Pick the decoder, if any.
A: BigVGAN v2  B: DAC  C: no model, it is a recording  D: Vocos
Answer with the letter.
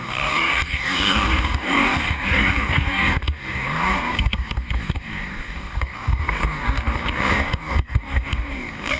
B